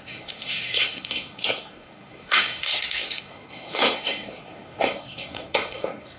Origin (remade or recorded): remade